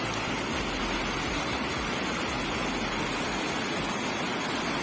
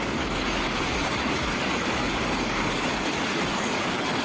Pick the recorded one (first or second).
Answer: first